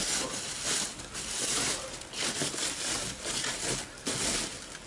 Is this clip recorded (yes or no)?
yes